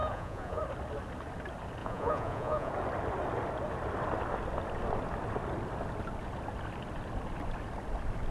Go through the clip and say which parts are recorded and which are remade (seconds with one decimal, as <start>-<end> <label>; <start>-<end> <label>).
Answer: 0.0-0.6 remade; 0.6-1.8 recorded; 1.8-2.7 remade; 2.7-8.3 recorded